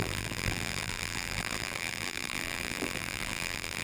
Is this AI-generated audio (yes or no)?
yes